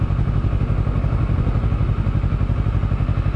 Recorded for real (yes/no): yes